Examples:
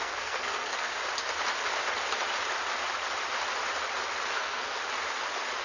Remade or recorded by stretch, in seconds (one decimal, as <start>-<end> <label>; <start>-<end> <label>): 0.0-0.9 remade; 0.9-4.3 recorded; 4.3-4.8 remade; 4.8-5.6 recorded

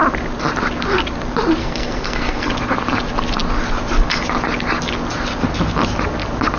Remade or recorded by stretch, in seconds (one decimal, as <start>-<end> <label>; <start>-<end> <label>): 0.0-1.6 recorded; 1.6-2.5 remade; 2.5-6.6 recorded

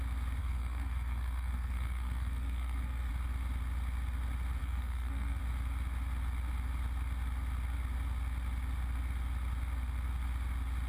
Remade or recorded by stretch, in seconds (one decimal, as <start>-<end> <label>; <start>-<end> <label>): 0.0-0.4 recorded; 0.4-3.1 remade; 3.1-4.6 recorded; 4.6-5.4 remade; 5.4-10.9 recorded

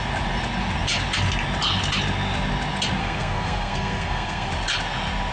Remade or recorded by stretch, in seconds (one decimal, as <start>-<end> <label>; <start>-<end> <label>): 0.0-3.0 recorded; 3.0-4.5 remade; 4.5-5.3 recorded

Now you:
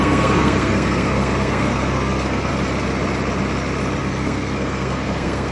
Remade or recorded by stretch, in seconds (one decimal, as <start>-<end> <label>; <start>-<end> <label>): 0.0-2.5 remade; 2.5-4.0 recorded; 4.0-5.5 remade

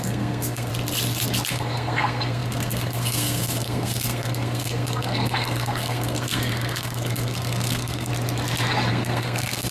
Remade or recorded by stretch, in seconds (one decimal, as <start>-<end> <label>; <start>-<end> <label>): 0.0-0.7 remade; 0.7-1.5 recorded; 1.5-8.1 remade; 8.1-8.9 recorded; 8.9-9.7 remade